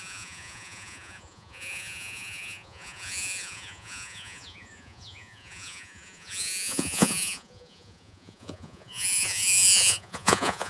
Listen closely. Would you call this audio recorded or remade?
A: remade